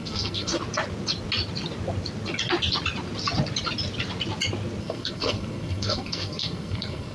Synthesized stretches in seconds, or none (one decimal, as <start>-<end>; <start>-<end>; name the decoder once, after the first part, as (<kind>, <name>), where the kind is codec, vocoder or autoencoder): 0.0-0.5 (codec, SNAC); 4.8-7.1